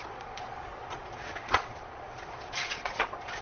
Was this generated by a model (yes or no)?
yes